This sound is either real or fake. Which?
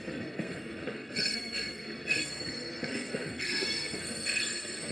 fake